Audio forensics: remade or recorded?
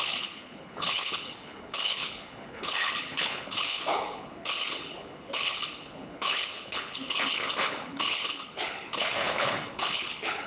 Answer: remade